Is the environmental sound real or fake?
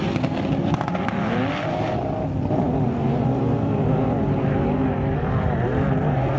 real